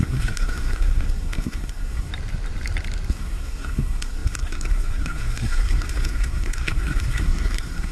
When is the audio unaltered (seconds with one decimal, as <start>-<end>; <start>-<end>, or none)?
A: 2.1-3.1